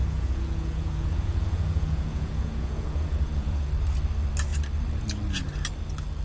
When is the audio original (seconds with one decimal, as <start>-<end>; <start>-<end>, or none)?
3.7-6.2